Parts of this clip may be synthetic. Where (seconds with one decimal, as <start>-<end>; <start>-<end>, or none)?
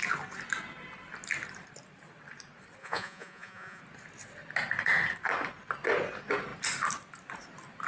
2.8-3.8